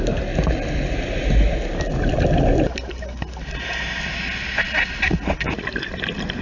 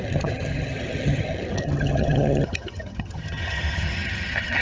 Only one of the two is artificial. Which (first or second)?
second